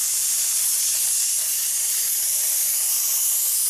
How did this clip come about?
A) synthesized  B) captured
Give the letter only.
B